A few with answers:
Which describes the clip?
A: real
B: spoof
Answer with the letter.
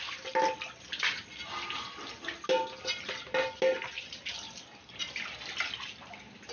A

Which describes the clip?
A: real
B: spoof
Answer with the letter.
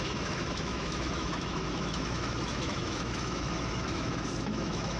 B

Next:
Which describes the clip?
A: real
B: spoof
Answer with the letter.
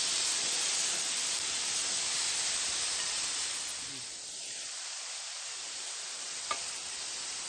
B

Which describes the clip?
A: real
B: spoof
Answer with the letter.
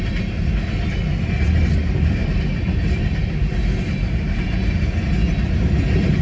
A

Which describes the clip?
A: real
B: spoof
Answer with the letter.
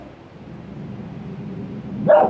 A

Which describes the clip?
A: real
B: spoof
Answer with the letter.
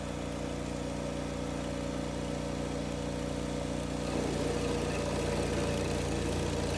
A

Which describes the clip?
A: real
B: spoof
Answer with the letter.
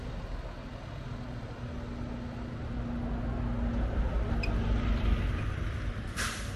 A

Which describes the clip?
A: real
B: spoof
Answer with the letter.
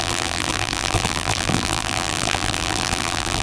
B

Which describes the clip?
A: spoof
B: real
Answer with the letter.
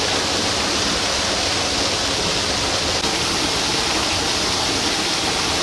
B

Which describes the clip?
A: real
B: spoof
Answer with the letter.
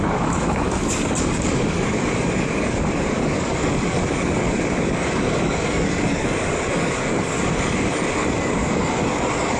B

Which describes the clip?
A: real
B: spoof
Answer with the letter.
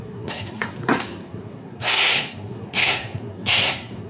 B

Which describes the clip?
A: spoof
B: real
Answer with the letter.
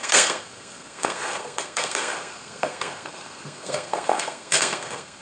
A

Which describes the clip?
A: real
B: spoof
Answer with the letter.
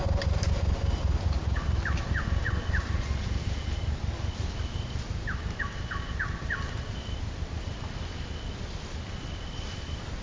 A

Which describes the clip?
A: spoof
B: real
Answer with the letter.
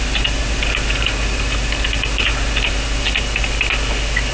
B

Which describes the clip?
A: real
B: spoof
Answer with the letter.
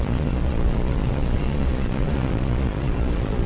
B